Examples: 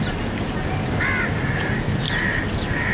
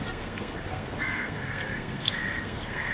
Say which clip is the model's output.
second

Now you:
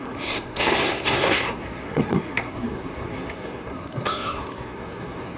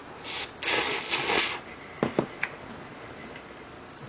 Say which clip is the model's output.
first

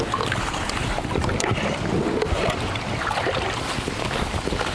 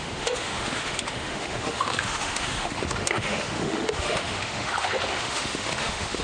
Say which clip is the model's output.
second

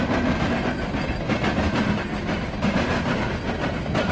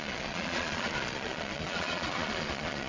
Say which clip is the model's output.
second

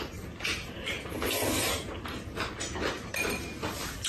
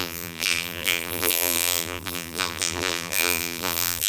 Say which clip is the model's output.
second